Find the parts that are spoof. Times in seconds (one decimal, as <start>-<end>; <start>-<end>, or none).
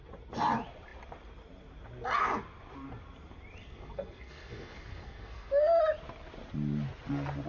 3.6-5.8